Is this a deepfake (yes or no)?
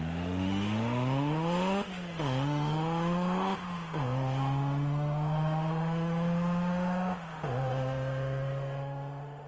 yes